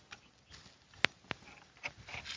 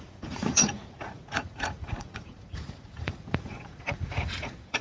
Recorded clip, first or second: first